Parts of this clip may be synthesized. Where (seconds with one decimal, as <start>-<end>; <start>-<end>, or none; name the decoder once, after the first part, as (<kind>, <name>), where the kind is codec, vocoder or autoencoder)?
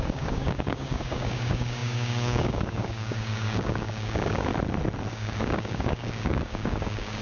0.0-4.5 (codec, DAC); 5.1-7.2